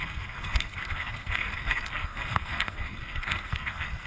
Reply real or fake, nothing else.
fake